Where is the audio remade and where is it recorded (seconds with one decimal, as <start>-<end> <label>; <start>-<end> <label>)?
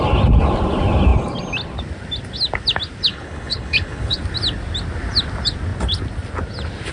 0.0-3.1 recorded; 3.1-4.2 remade; 4.2-6.9 recorded